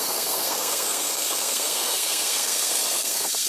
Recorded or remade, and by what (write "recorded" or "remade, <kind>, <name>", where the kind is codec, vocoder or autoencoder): remade, codec, SNAC